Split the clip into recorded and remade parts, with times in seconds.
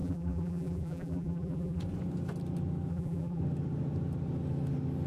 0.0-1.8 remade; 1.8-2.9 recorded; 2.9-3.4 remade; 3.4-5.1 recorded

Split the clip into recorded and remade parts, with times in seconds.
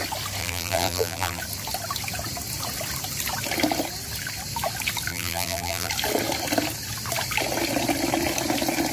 0.0-0.4 recorded; 0.4-1.4 remade; 1.4-5.1 recorded; 5.1-5.9 remade; 5.9-8.9 recorded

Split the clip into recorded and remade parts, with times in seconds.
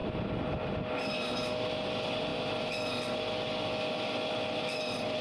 0.0-5.2 recorded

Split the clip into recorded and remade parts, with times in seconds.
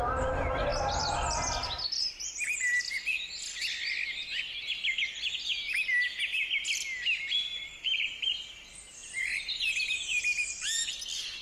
0.0-7.5 recorded; 7.5-8.4 remade; 8.4-9.0 recorded; 9.0-11.0 remade; 11.0-11.4 recorded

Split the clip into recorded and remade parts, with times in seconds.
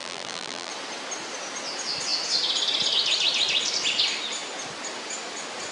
0.0-0.7 remade; 0.7-5.7 recorded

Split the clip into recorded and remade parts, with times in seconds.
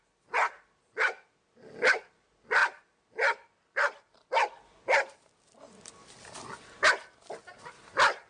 0.0-8.3 recorded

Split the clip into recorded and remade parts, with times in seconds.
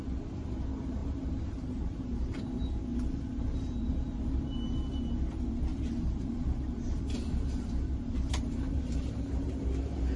0.0-1.0 recorded; 1.0-4.1 remade; 4.1-5.7 recorded; 5.7-9.6 remade; 9.6-10.2 recorded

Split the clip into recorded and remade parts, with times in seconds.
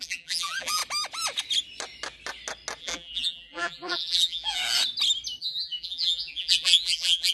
0.0-0.8 remade; 0.8-2.8 recorded; 2.8-4.6 remade; 4.6-5.4 recorded; 5.4-7.3 remade